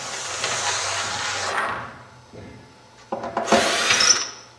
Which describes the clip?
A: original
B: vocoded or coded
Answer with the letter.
A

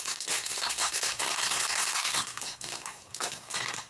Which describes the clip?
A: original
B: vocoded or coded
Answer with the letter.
B